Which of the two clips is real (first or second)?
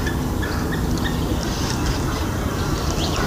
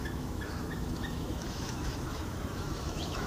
first